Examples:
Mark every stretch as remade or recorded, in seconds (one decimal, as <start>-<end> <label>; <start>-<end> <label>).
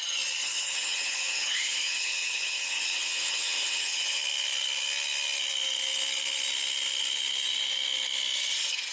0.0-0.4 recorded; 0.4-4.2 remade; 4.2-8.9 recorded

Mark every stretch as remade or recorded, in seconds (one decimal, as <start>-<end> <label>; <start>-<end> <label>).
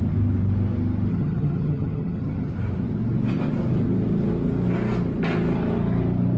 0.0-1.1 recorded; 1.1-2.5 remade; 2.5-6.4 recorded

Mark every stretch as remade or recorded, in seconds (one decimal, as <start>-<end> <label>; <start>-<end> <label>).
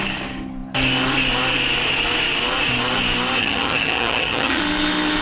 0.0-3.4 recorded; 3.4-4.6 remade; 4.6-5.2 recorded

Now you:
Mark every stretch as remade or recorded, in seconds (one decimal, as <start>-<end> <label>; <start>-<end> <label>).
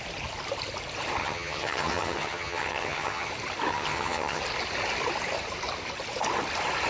0.0-1.2 recorded; 1.2-3.3 remade; 3.3-3.7 recorded; 3.7-4.4 remade; 4.4-6.9 recorded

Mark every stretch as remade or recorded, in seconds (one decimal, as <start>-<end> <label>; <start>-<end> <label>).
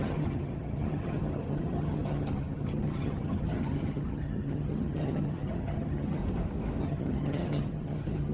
0.0-6.2 remade; 6.2-6.8 recorded; 6.8-8.3 remade